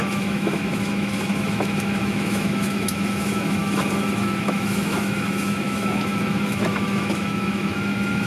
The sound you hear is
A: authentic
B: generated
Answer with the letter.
B